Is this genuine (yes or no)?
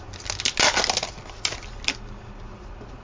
yes